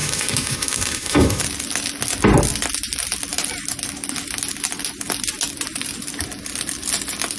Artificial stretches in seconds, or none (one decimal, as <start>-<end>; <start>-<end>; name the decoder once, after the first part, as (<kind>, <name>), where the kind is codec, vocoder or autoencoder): 0.0-1.4 (autoencoder, DAC-VAE)